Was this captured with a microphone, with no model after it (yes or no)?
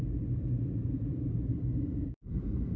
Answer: no